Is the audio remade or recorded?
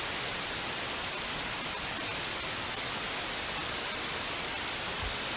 recorded